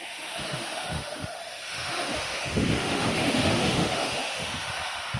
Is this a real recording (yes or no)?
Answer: no